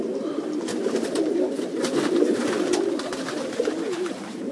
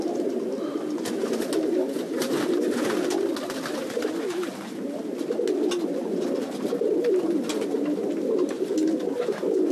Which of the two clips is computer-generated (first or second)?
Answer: first